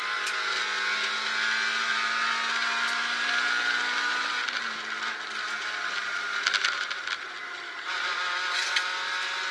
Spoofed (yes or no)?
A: no